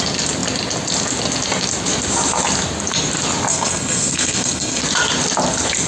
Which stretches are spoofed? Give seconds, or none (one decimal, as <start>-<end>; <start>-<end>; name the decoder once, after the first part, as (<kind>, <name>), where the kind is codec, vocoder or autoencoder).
3.5-4.8 (codec, SNAC)